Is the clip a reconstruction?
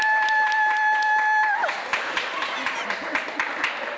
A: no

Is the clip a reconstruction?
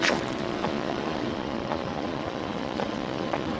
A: yes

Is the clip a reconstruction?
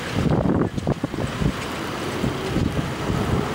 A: no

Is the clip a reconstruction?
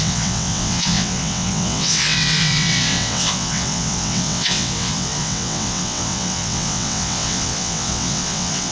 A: yes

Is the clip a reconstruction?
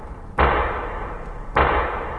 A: yes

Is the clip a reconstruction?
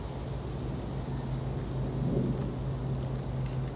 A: no